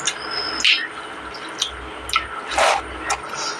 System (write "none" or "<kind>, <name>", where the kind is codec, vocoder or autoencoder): none